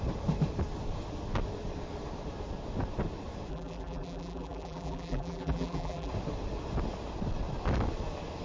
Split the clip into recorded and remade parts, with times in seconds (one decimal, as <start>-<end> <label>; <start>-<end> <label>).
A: 0.0-3.5 recorded; 3.5-6.1 remade; 6.1-8.4 recorded